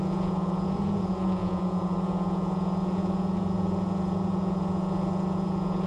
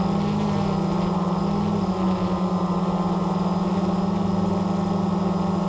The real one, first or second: second